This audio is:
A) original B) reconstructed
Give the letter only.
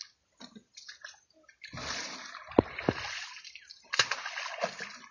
A